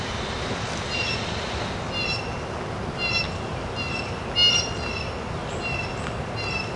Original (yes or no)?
yes